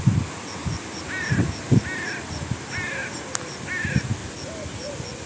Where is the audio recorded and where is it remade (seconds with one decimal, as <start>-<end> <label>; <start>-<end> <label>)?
0.0-5.3 recorded